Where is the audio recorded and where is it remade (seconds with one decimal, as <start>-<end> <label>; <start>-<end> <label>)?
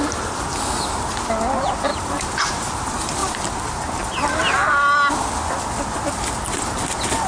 0.0-7.3 recorded